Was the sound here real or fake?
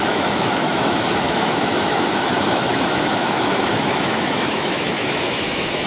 fake